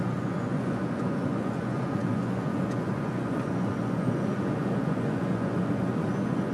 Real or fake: fake